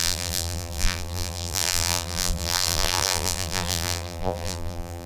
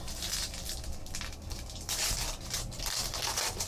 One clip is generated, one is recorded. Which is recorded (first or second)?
second